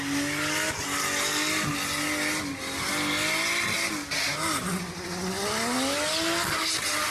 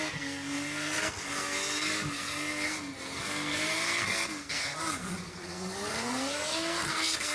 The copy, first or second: second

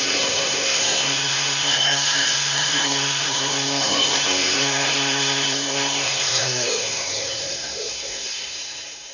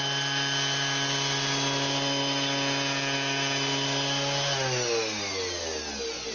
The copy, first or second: first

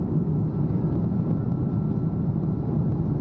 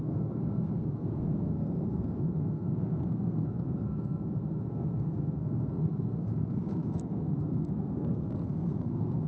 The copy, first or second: second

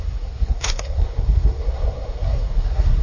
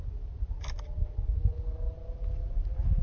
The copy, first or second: first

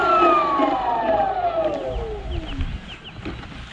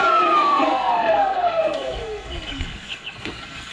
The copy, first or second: second